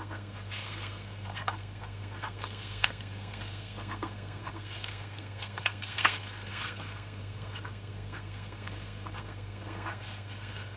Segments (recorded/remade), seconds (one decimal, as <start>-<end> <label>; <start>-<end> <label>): 0.0-10.8 remade